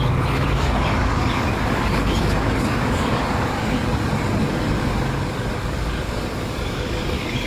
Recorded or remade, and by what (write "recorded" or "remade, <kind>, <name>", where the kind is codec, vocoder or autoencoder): remade, codec, DAC